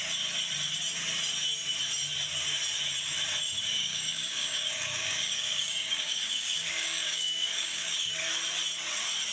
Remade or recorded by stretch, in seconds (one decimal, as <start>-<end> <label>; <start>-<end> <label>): 0.0-3.8 recorded; 3.8-8.3 remade; 8.3-9.3 recorded